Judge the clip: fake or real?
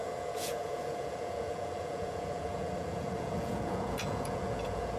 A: fake